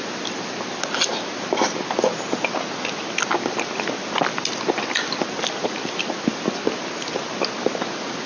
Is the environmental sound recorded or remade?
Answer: recorded